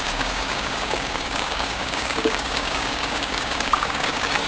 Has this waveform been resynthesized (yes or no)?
yes